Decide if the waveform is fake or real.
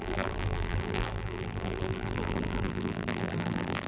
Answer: fake